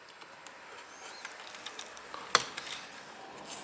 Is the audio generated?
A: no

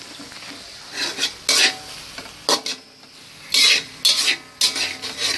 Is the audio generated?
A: no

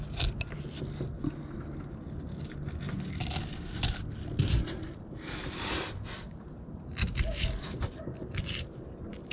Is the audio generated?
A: no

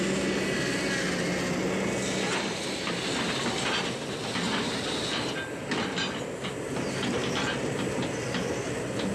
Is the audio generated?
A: no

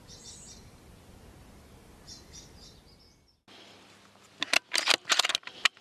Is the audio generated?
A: no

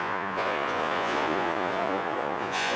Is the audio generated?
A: yes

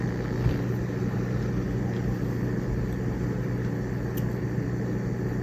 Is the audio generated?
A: no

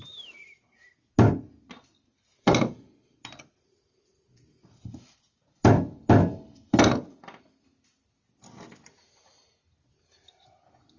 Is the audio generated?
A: no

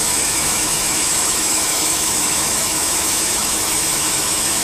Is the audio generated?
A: yes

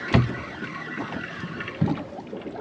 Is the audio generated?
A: no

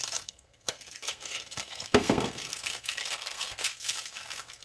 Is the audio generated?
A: yes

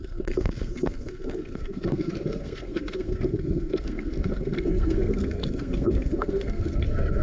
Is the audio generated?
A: yes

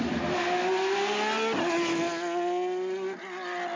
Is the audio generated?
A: no